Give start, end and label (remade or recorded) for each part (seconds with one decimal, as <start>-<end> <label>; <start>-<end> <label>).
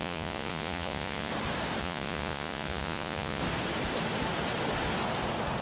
0.0-1.3 remade; 1.3-1.8 recorded; 1.8-3.4 remade; 3.4-5.6 recorded